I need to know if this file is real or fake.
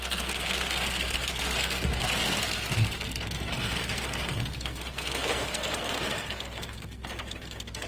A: fake